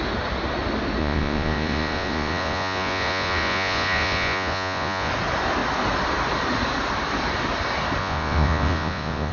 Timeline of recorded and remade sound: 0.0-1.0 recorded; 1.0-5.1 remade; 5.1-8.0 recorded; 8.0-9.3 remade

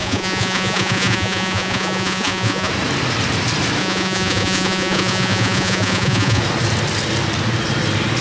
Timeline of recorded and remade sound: 0.0-2.7 remade; 2.7-3.8 recorded; 3.8-6.4 remade; 6.4-8.2 recorded

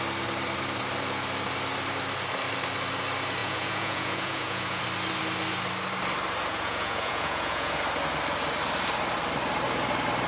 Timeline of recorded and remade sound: 0.0-3.4 recorded; 3.4-4.8 remade; 4.8-6.5 recorded; 6.5-7.8 remade; 7.8-10.3 recorded